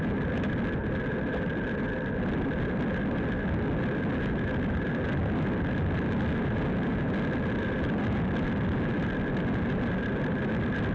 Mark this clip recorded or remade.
recorded